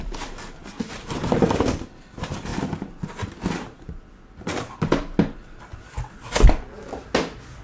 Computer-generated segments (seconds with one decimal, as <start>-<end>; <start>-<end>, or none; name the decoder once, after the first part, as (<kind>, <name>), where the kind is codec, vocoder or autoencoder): none